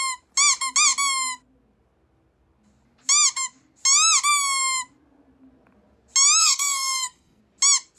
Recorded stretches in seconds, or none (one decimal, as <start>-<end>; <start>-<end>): 0.0-6.4; 7.4-8.0